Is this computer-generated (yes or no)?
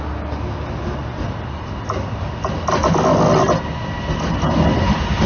no